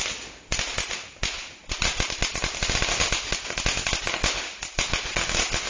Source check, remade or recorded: recorded